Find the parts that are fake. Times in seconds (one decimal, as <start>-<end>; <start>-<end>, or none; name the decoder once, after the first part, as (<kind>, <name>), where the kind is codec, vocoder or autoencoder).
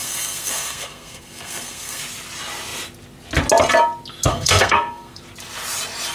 0.0-2.0 (codec, SNAC); 4.3-5.2